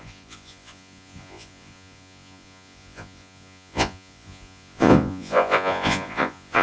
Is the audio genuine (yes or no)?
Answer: no